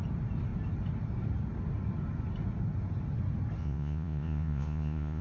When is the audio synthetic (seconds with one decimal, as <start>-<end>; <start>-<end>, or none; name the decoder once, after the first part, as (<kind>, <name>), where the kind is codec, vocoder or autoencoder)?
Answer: 3.6-5.2 (vocoder, Vocos)